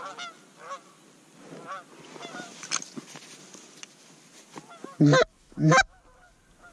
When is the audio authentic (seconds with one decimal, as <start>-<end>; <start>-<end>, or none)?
0.0-5.3; 6.0-6.7